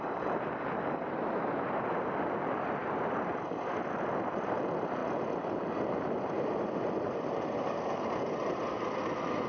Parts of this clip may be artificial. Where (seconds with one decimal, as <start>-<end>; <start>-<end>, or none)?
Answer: 0.0-5.0; 5.9-9.5